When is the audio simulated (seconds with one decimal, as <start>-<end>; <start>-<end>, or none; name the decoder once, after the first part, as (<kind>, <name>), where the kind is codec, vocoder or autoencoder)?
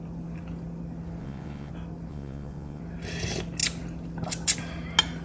1.2-1.7 (vocoder, Vocos); 2.1-2.8